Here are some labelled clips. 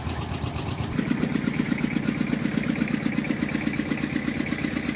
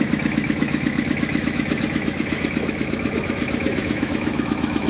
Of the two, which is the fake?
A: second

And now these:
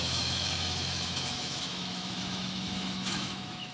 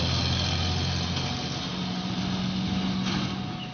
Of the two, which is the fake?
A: first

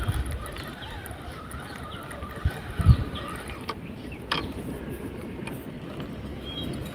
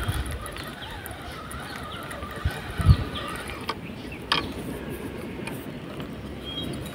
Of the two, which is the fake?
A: first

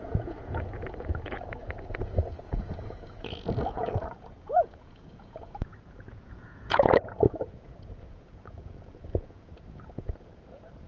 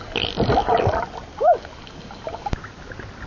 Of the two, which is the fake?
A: first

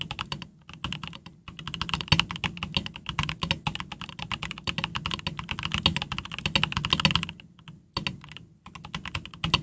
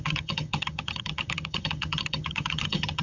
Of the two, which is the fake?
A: second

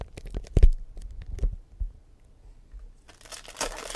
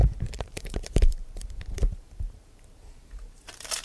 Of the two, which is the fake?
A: second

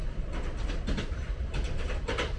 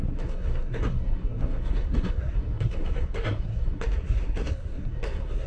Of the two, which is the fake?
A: second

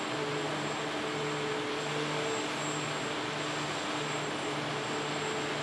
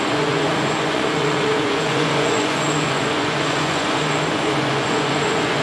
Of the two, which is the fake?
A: second